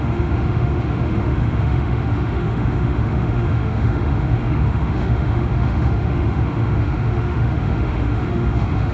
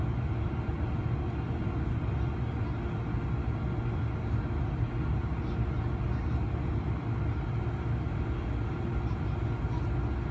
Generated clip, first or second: first